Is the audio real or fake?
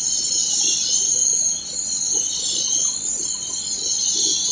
real